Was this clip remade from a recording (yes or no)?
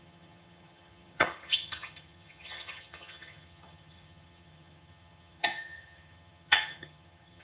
yes